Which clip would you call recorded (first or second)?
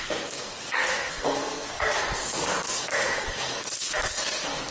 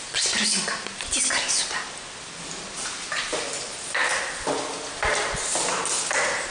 second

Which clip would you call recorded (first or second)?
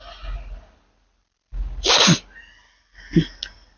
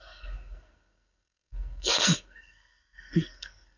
first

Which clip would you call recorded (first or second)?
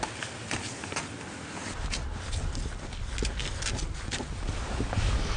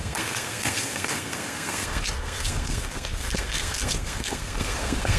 first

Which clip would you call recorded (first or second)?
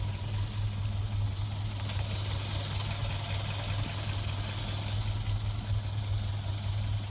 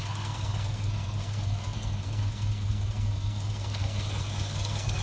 first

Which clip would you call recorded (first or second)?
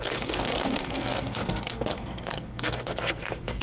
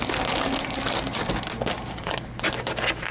second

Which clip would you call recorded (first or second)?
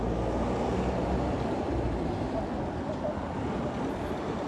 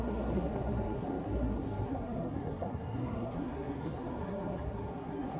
first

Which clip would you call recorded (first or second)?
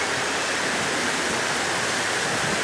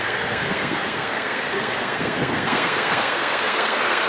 first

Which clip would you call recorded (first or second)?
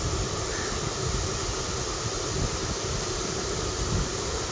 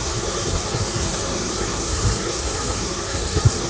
first